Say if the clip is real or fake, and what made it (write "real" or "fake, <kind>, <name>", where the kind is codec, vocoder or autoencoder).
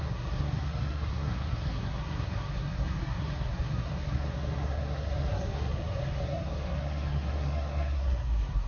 fake, codec, SNAC